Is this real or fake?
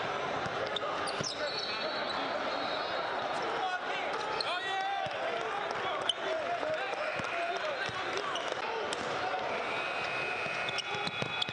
real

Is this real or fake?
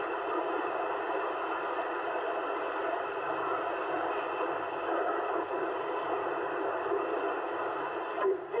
real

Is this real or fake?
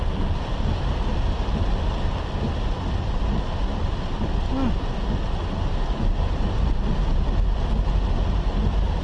real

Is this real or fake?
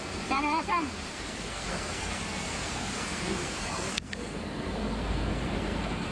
fake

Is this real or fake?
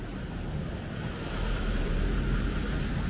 fake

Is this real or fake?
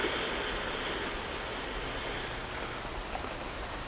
real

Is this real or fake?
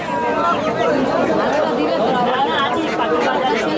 real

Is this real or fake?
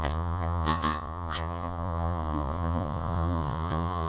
fake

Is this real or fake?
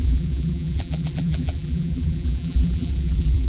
fake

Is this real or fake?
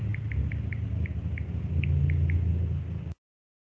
real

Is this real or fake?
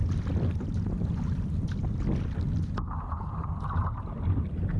real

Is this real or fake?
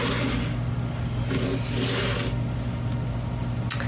real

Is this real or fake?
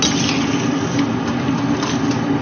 real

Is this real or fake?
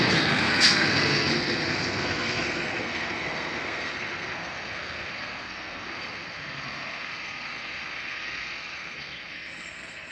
fake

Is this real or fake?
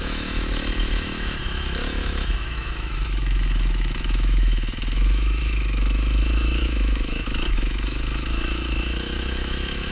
fake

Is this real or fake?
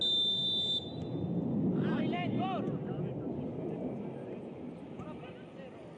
real